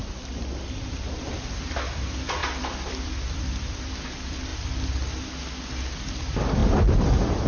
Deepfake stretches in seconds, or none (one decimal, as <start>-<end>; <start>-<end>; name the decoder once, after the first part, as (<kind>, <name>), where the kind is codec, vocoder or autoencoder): 0.0-4.5 (vocoder, BigVGAN v2); 6.1-7.5